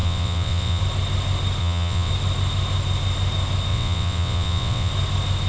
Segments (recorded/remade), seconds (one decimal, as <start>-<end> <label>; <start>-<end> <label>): 0.0-0.8 remade; 0.8-1.6 recorded; 1.6-2.1 remade; 2.1-3.7 recorded; 3.7-4.9 remade; 4.9-5.5 recorded